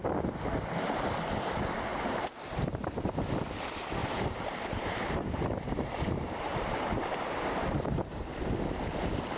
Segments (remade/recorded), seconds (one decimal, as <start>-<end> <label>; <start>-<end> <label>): 0.0-1.9 recorded; 1.9-3.0 remade; 3.0-4.0 recorded; 4.0-8.2 remade; 8.2-9.4 recorded